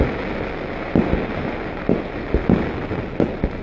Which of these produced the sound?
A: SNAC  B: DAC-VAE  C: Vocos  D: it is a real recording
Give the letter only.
D